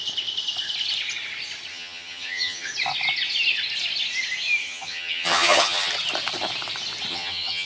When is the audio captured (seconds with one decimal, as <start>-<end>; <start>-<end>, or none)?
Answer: 0.0-1.7; 2.7-4.6; 5.9-7.1